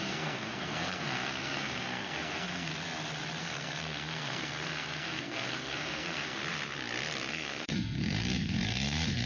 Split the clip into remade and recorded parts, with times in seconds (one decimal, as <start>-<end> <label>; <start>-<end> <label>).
0.0-2.7 remade; 2.7-3.4 recorded; 3.4-6.4 remade; 6.4-7.3 recorded; 7.3-9.3 remade

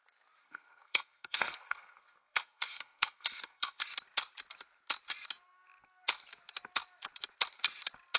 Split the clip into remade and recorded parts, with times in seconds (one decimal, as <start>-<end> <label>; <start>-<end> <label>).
0.0-0.4 recorded; 0.4-3.8 remade; 3.8-8.2 recorded

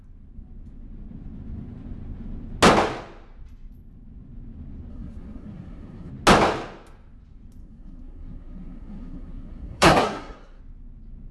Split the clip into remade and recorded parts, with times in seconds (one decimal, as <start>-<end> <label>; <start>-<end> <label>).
0.0-4.9 recorded; 4.9-6.1 remade; 6.1-7.6 recorded; 7.6-10.6 remade; 10.6-11.3 recorded

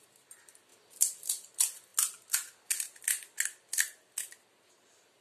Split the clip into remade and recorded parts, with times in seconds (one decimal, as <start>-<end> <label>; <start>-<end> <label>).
0.0-5.2 recorded